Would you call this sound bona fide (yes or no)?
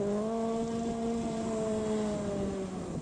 yes